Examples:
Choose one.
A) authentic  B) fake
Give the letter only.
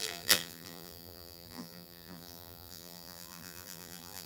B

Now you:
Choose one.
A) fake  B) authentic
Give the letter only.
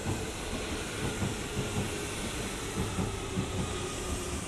B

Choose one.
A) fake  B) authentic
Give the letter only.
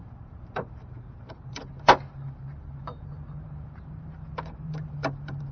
A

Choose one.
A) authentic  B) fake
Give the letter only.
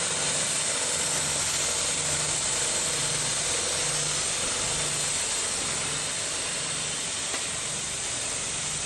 A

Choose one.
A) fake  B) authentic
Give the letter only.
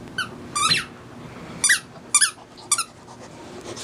B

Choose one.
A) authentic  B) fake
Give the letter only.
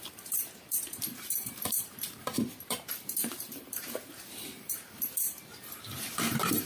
B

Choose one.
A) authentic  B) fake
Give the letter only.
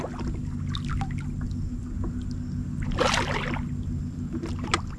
A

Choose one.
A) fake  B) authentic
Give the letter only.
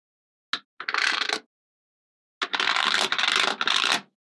B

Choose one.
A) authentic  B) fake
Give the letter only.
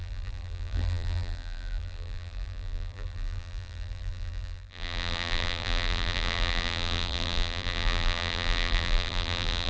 B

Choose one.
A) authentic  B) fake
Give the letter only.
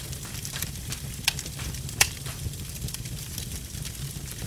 B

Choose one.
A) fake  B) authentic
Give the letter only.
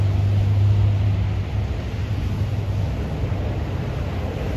B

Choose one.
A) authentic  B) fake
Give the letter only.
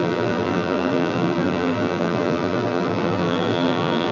B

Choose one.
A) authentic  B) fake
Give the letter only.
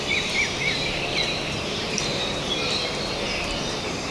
B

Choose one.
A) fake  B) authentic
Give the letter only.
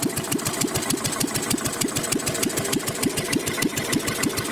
A